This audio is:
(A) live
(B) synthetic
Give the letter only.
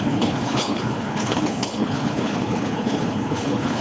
B